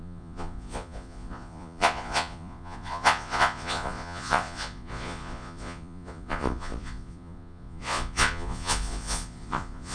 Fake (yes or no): yes